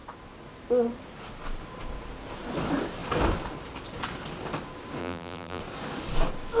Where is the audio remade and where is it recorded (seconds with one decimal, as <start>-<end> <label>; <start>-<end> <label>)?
0.0-5.0 recorded; 5.0-5.6 remade; 5.6-6.6 recorded